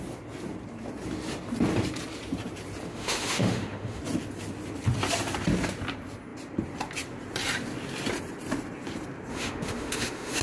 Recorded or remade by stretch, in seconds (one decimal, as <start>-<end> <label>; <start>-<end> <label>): 0.0-2.9 recorded; 2.9-4.0 remade; 4.0-9.3 recorded; 9.3-10.4 remade

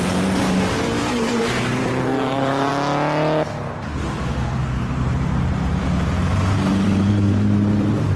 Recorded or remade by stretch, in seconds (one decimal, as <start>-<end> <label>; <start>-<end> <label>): 0.0-2.7 remade; 2.7-4.0 recorded; 4.0-8.2 remade

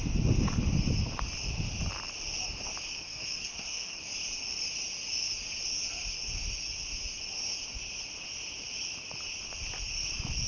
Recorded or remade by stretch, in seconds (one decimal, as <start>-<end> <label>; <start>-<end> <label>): 0.0-2.9 recorded; 2.9-4.0 remade; 4.0-10.5 recorded

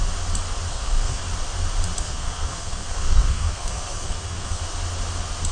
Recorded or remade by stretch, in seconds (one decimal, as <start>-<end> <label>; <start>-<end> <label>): 0.0-0.7 recorded; 0.7-1.2 remade; 1.2-2.0 recorded; 2.0-4.6 remade; 4.6-5.5 recorded

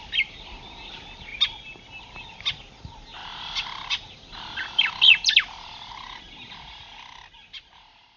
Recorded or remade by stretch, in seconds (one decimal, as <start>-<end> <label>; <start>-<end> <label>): 0.0-1.3 recorded; 1.3-2.0 remade; 2.0-3.2 recorded; 3.2-6.2 remade; 6.2-8.2 recorded

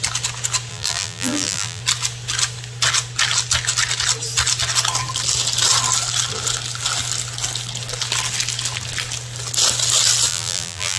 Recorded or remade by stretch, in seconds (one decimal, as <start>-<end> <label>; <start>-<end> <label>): 0.0-0.7 recorded; 0.7-1.8 remade; 1.8-10.3 recorded; 10.3-11.0 remade